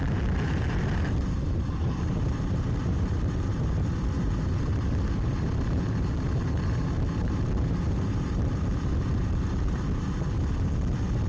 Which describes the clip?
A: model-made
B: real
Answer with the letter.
A